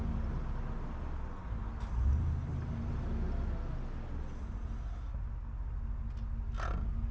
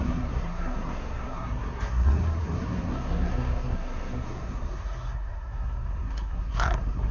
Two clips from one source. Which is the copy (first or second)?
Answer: second